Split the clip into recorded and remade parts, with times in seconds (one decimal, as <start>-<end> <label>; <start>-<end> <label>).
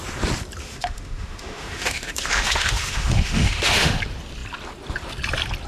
0.0-0.6 recorded; 0.6-4.0 remade; 4.0-5.7 recorded